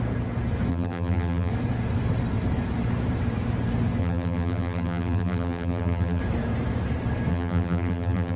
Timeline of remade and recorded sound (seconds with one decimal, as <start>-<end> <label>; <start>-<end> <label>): 0.0-0.7 recorded; 0.7-1.5 remade; 1.5-4.0 recorded; 4.0-6.2 remade; 6.2-7.3 recorded; 7.3-8.4 remade